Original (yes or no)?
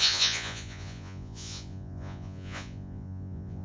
no